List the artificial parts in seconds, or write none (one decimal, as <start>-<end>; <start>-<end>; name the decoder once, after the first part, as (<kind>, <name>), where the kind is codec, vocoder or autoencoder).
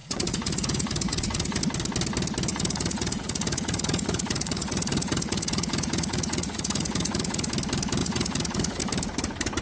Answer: 0.0-1.6 (vocoder, Vocos); 2.5-7.5; 8.0-8.8